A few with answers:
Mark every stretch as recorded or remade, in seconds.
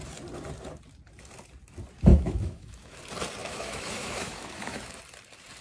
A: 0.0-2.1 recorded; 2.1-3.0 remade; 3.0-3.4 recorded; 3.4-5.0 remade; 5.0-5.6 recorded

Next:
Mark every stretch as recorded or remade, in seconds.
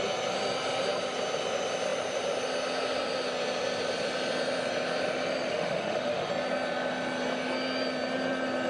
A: 0.0-5.5 recorded; 5.5-6.3 remade; 6.3-8.7 recorded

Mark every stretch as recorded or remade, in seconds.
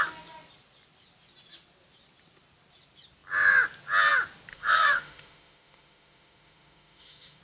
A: 0.0-4.5 recorded; 4.5-7.4 remade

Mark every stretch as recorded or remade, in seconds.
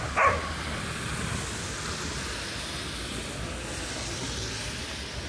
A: 0.0-5.3 recorded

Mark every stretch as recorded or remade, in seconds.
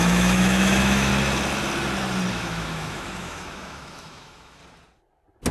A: 0.0-1.1 remade; 1.1-2.3 recorded; 2.3-4.6 remade; 4.6-5.5 recorded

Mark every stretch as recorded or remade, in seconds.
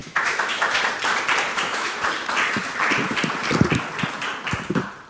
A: 0.0-0.8 remade; 0.8-1.5 recorded; 1.5-2.0 remade; 2.0-5.1 recorded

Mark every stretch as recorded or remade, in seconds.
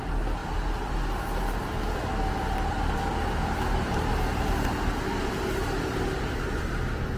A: 0.0-7.2 recorded